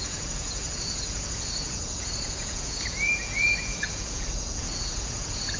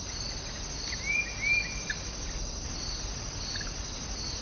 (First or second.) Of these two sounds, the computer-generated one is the first